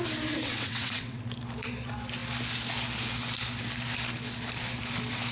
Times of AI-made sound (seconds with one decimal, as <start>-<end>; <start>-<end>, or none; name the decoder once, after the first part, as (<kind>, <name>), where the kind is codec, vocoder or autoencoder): 0.4-1.2 (vocoder, WaveNeXt)